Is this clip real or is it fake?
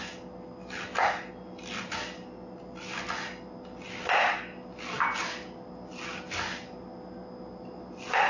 real